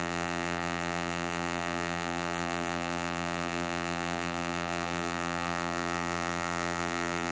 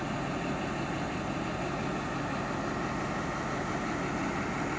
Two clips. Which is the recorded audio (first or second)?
second